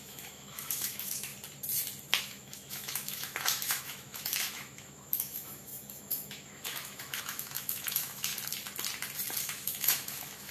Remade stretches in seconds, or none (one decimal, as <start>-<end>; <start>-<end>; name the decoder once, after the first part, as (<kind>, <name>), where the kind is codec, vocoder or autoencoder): 0.0-1.3 (autoencoder, DAC-VAE); 2.2-8.3; 9.4-10.5

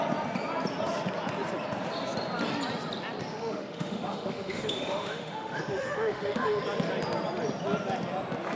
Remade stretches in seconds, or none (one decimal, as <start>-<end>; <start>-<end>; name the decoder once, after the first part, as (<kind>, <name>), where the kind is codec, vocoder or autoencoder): 3.3-6.6 (autoencoder, DAC-VAE)